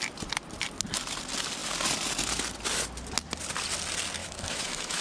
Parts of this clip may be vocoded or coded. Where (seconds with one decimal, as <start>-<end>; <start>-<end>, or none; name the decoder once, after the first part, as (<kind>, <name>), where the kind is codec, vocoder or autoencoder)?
4.2-5.0 (autoencoder, DAC-VAE)